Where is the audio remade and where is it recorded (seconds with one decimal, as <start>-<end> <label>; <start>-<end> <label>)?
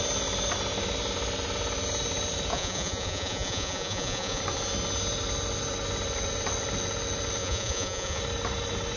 0.0-2.5 recorded; 2.5-4.4 remade; 4.4-7.4 recorded; 7.4-8.2 remade; 8.2-9.0 recorded